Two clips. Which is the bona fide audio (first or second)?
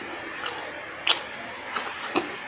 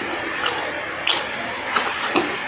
first